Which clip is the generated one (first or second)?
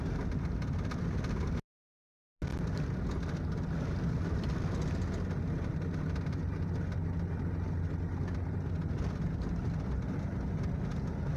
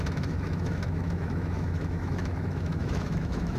second